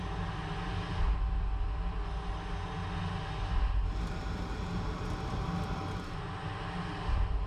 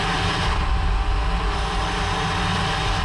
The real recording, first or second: first